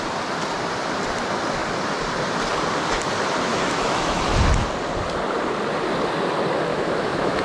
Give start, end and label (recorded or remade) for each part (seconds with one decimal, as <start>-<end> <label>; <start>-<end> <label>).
0.0-3.5 recorded; 3.5-4.2 remade; 4.2-6.7 recorded; 6.7-7.4 remade